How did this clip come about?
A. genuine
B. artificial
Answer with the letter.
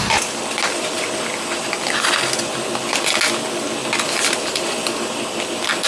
A